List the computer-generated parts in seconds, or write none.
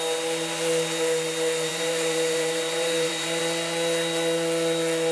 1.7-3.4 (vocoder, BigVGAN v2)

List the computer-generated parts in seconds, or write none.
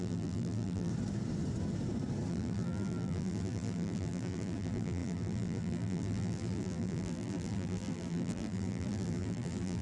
0.0-0.9 (vocoder, BigVGAN v2); 2.3-9.8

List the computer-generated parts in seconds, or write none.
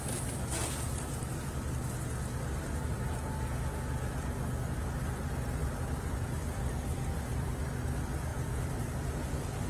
5.6-7.6 (vocoder, BigVGAN v2); 8.3-8.9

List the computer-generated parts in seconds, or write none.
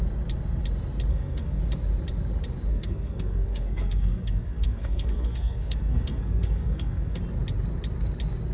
1.1-1.6 (codec, SNAC); 2.7-7.2